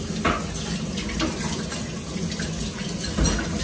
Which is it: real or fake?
real